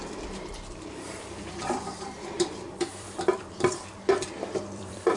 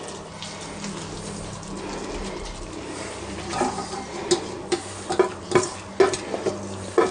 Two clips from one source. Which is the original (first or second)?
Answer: second